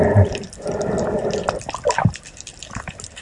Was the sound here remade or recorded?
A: recorded